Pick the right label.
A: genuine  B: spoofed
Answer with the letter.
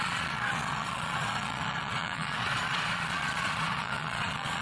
B